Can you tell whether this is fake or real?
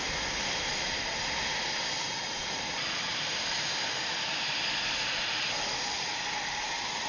fake